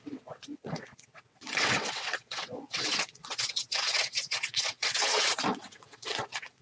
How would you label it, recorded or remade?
remade